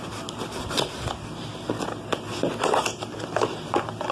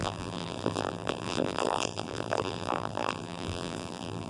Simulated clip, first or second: second